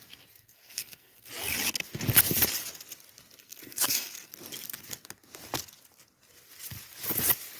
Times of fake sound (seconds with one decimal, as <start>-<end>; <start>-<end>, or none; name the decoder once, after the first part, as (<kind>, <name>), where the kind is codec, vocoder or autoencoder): 0.4-1.3 (codec, SNAC); 3.4-4.3